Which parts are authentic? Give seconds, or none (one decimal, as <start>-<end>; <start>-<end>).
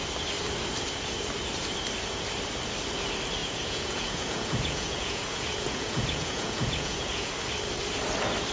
0.0-3.4; 7.3-8.5